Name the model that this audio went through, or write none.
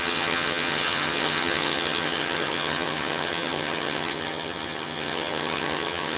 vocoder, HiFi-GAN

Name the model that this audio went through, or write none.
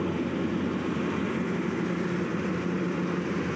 none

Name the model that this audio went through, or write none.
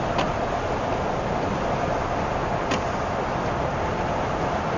none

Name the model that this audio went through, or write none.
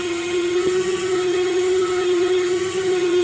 vocoder, HiFi-GAN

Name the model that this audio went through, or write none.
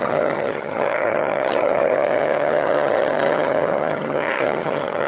vocoder, HiFi-GAN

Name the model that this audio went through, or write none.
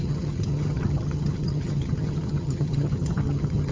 vocoder, HiFi-GAN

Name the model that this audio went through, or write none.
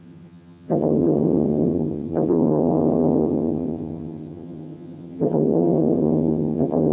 vocoder, HiFi-GAN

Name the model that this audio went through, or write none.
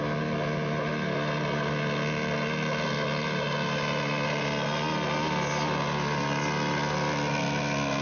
none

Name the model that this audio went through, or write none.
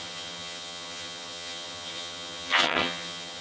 vocoder, HiFi-GAN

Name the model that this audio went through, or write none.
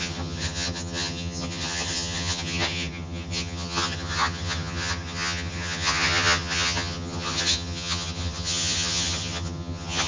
vocoder, HiFi-GAN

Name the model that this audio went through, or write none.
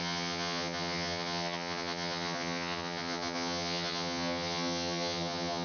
vocoder, HiFi-GAN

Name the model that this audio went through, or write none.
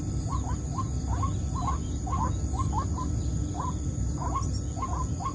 none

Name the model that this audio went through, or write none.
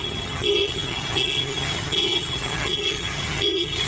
vocoder, HiFi-GAN